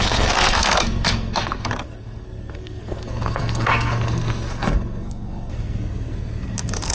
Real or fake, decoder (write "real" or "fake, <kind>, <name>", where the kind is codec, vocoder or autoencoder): fake, codec, SNAC